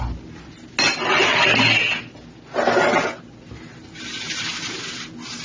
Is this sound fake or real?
real